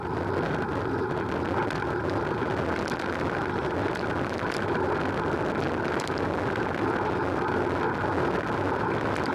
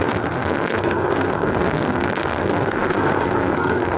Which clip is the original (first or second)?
first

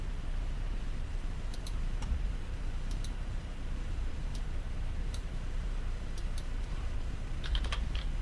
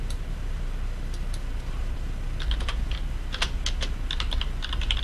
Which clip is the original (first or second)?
second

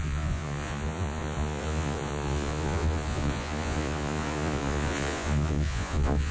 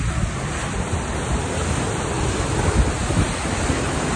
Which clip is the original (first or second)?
second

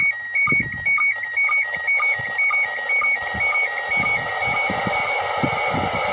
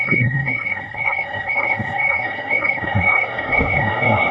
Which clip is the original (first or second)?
first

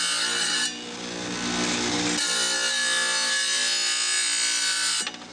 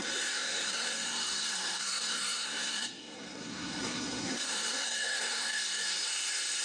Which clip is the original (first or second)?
first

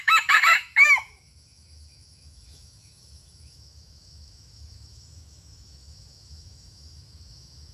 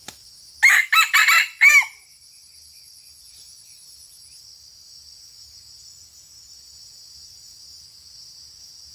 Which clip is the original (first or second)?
second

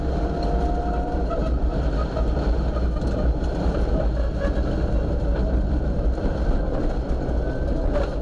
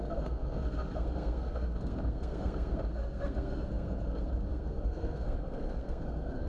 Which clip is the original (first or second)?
first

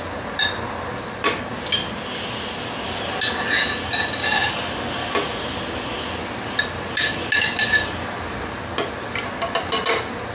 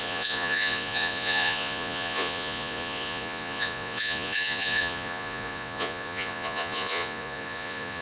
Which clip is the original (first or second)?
first